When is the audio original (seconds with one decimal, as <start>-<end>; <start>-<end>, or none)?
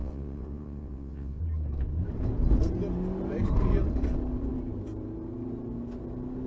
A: 1.4-6.5